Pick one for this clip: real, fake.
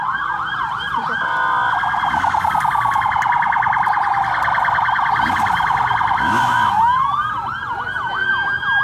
real